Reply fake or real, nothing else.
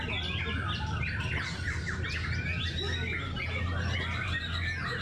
real